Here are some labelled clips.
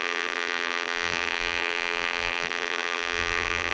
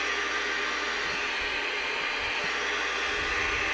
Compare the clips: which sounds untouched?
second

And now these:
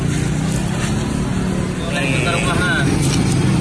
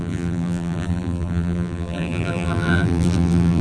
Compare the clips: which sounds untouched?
first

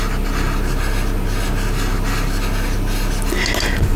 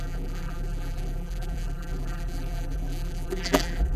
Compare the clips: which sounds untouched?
first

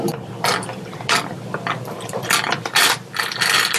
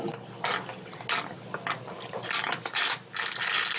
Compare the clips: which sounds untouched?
second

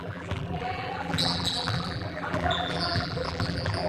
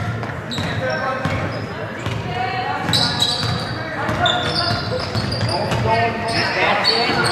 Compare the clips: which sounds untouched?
second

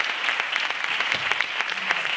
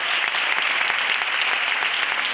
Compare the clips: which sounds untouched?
second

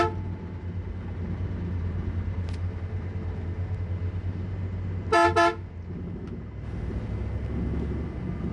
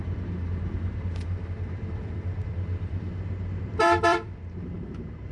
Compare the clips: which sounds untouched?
first